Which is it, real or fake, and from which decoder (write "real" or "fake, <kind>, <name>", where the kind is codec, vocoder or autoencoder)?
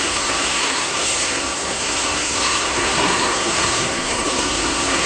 fake, codec, SNAC